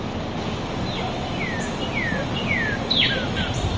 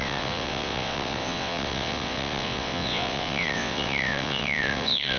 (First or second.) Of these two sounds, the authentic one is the first